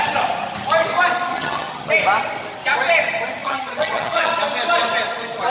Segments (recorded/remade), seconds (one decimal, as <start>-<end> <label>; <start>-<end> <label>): 0.0-1.3 recorded; 1.3-1.9 remade; 1.9-3.4 recorded; 3.4-4.3 remade; 4.3-5.5 recorded